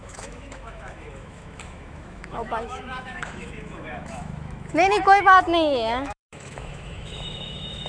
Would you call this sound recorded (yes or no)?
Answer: no